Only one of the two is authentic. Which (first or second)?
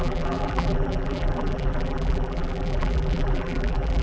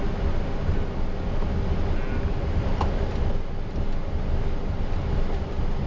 second